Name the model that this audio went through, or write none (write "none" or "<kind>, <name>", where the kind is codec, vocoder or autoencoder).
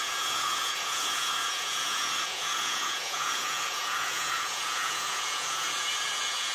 vocoder, Vocos